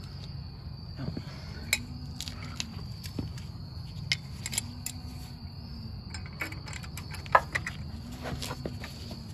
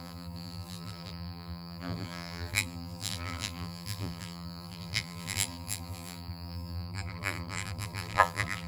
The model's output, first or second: second